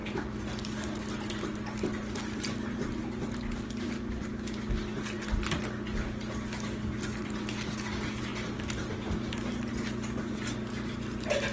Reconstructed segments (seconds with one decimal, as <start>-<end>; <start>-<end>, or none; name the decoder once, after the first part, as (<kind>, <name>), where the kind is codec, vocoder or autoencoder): none